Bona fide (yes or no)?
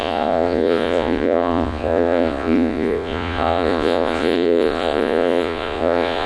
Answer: no